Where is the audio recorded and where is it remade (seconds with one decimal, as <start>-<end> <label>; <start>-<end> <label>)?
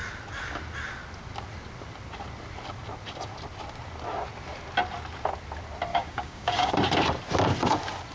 0.0-5.9 recorded; 5.9-6.7 remade; 6.7-8.1 recorded